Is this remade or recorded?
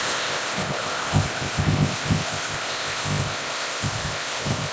remade